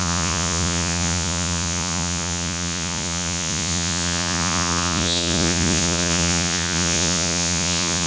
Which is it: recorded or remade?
remade